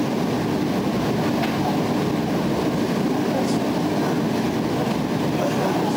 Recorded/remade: recorded